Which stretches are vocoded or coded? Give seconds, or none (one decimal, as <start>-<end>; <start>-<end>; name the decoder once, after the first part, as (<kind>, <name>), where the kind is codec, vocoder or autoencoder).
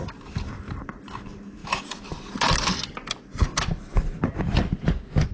none